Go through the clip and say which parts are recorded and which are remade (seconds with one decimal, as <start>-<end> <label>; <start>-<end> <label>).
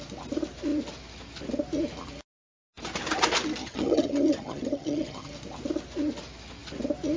0.0-3.6 recorded; 3.6-5.3 remade; 5.3-7.2 recorded